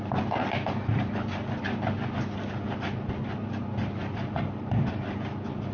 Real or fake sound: real